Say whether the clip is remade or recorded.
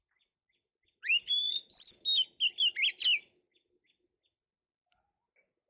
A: recorded